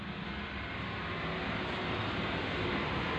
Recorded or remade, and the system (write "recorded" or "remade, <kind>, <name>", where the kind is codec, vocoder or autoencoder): recorded